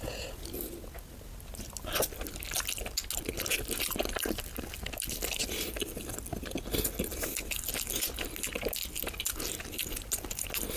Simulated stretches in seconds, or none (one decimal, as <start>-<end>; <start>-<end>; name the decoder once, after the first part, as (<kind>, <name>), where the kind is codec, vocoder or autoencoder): none

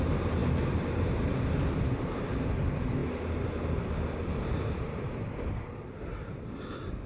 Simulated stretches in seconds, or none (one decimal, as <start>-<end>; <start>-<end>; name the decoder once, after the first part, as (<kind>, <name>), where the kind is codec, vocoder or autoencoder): 0.0-3.0 (vocoder, BigVGAN v2); 6.0-7.1

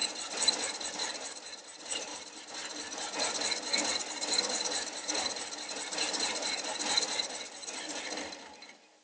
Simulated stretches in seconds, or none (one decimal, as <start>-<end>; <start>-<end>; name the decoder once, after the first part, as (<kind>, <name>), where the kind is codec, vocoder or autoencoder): 0.9-2.1 (vocoder, BigVGAN v2); 5.7-6.4; 8.4-9.0

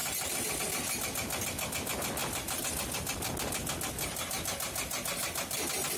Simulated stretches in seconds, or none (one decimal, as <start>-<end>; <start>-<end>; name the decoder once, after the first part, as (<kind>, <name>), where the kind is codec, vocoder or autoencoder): 0.0-0.6 (vocoder, BigVGAN v2)

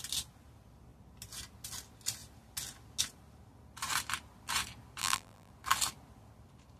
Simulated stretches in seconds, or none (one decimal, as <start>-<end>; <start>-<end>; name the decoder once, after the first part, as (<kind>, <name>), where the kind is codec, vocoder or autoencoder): 5.0-5.5 (vocoder, BigVGAN v2)

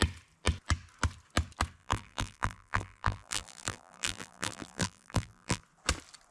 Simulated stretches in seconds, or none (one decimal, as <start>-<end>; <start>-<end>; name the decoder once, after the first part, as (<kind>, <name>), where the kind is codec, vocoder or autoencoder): 1.8-5.6 (vocoder, BigVGAN v2)